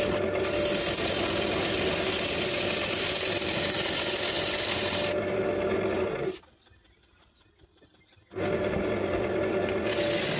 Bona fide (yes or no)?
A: yes